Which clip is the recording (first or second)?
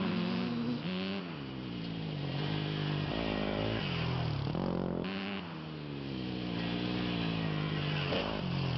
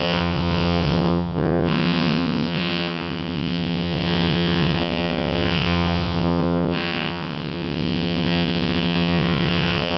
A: first